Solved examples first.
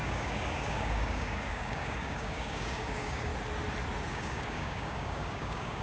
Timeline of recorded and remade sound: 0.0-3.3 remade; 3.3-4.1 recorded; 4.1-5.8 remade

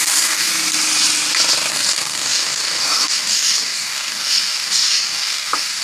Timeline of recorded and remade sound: 0.0-0.5 remade; 0.5-1.7 recorded; 1.7-5.8 remade